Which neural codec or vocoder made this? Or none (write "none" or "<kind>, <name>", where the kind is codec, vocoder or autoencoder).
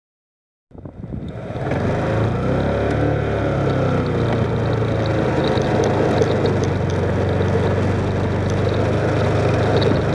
none